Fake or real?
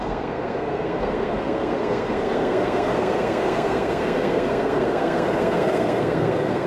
fake